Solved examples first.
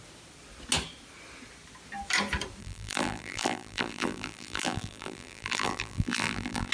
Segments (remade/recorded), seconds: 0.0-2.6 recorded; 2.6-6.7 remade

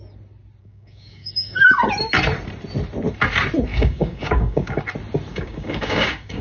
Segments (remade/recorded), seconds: 0.0-0.6 recorded; 0.6-1.8 remade; 1.8-3.7 recorded; 3.7-4.8 remade; 4.8-5.3 recorded; 5.3-6.4 remade

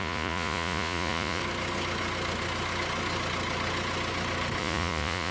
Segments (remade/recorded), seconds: 0.0-1.4 remade; 1.4-4.6 recorded; 4.6-5.3 remade

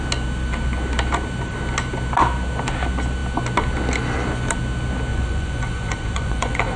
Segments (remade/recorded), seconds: 0.0-5.1 recorded; 5.1-6.8 remade